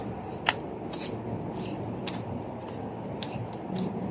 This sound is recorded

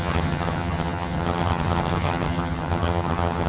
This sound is remade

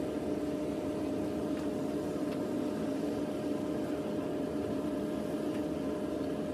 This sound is recorded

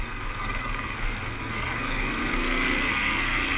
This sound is remade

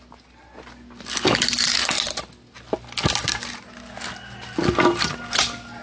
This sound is recorded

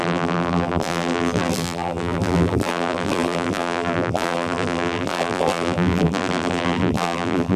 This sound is remade